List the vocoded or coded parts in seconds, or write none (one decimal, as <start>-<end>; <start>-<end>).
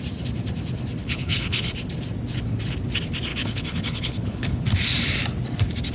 1.0-1.7; 3.3-4.6